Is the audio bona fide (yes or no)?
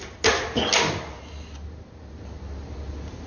yes